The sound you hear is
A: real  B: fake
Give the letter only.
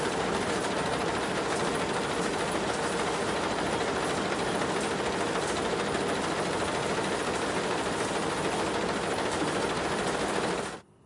A